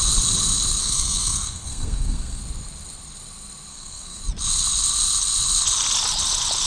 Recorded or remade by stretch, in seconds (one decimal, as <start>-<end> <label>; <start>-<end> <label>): 0.0-0.8 recorded; 0.8-2.4 remade; 2.4-3.7 recorded; 3.7-4.2 remade; 4.2-6.7 recorded